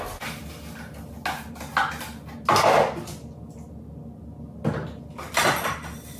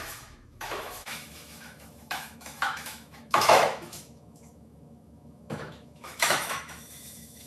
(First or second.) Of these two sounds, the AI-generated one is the second